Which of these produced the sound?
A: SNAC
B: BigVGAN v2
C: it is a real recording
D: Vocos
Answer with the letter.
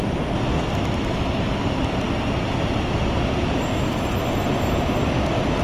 C